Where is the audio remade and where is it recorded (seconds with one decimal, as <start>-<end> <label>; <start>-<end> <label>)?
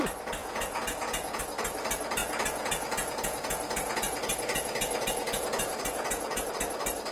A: 0.0-0.4 recorded; 0.4-1.4 remade; 1.4-2.2 recorded; 2.2-6.5 remade; 6.5-7.1 recorded